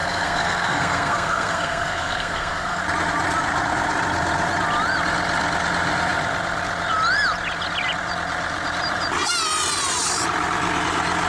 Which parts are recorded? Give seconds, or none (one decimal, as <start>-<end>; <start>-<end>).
2.8-11.3